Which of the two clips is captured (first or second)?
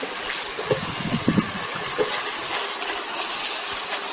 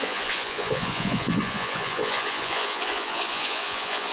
first